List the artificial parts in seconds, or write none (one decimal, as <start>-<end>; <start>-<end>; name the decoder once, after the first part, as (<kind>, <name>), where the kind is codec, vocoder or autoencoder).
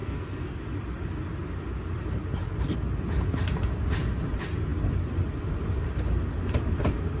0.0-0.6 (codec, SNAC)